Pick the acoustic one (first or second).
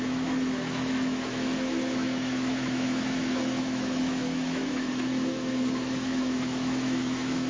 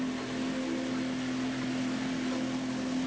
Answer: second